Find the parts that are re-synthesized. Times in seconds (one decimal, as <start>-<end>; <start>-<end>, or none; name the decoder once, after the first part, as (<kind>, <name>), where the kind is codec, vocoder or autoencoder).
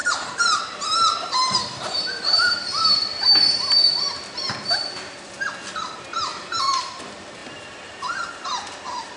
0.0-5.2 (vocoder, BigVGAN v2); 6.3-7.0; 7.4-8.3